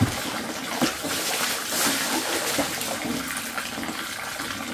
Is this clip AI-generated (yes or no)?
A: no